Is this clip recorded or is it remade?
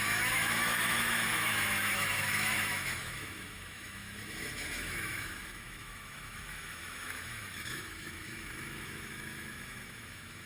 remade